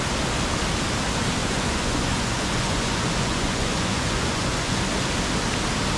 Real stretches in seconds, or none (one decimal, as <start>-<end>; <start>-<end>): 0.0-1.4; 4.8-6.0